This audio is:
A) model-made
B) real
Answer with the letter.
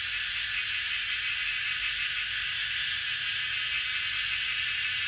B